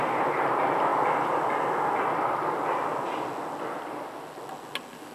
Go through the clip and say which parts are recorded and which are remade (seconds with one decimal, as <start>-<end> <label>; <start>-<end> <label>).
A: 0.0-5.1 recorded